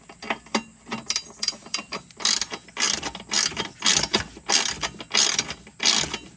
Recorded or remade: recorded